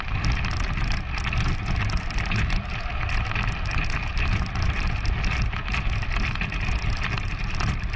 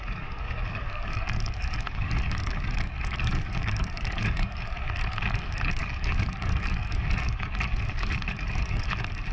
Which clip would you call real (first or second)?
first